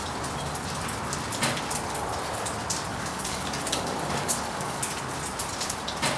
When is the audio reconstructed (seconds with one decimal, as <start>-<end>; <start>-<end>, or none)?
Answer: 2.9-4.8